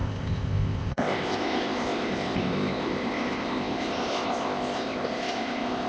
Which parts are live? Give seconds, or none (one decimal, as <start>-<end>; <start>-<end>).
none